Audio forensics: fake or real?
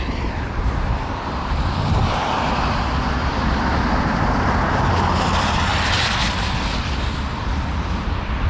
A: fake